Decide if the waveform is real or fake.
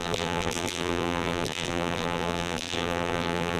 fake